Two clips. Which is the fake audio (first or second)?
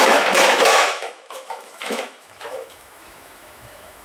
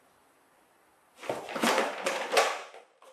first